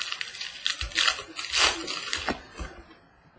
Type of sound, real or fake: real